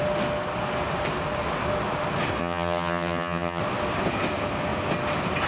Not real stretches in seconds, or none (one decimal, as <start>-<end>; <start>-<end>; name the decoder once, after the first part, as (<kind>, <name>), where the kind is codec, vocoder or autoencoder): 2.4-3.6 (vocoder, HiFi-GAN)